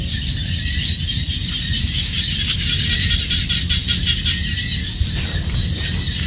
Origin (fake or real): real